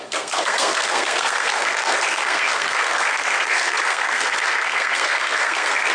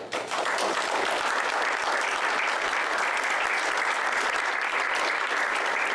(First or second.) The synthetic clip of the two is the first